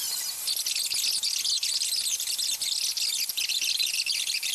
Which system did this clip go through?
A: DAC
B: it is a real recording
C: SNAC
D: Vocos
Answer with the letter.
B